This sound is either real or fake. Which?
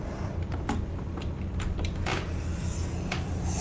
fake